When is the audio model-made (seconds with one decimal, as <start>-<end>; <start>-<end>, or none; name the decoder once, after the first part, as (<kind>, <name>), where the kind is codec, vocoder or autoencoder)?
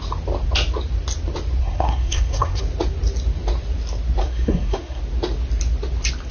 1.6-2.6 (codec, SNAC); 4.2-5.0